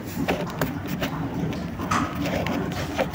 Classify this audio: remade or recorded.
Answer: recorded